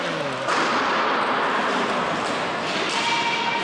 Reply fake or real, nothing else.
real